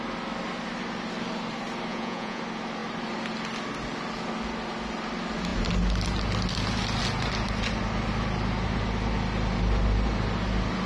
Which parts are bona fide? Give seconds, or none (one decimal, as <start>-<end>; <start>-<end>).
0.0-1.9; 2.4-10.9

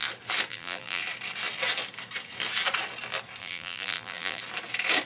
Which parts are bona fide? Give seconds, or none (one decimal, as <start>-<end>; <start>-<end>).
0.0-0.5; 1.0-3.4; 4.4-5.1

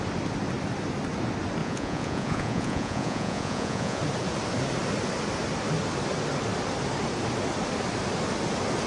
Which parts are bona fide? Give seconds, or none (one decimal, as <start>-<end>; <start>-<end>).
0.0-1.6; 4.0-8.9

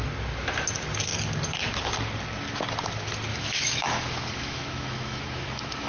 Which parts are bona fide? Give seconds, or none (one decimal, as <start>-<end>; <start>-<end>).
0.0-3.3

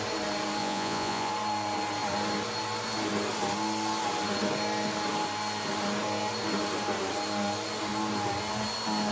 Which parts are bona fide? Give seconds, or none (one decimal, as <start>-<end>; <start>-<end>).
0.0-0.6; 1.3-9.1

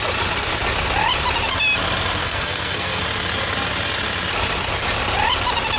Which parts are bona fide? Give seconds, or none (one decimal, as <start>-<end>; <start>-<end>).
0.0-2.2; 3.0-5.8

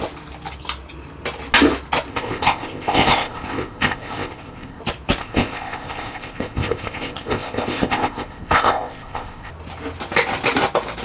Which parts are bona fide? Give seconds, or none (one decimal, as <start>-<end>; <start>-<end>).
0.0-2.1; 4.8-5.2; 9.5-11.0